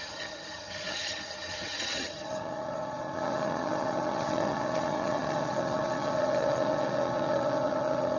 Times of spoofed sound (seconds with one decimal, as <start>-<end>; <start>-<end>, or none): 0.0-8.2